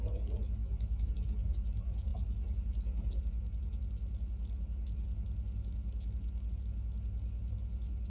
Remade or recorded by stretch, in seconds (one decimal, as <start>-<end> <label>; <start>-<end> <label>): 0.0-0.6 recorded; 0.6-1.1 remade; 1.1-8.1 recorded